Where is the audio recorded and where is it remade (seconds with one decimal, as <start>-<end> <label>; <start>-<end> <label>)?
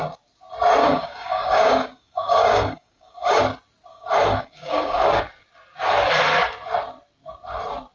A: 0.0-0.8 recorded; 0.8-3.4 remade; 3.4-3.9 recorded; 3.9-5.2 remade; 5.2-7.9 recorded